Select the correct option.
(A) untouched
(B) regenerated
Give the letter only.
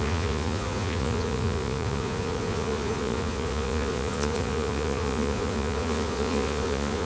B